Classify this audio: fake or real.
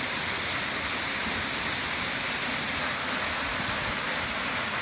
real